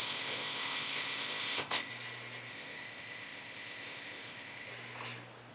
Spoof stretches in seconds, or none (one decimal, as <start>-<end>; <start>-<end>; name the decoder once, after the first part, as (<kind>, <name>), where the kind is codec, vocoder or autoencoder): 0.0-1.9 (codec, ZipCodec); 2.5-4.7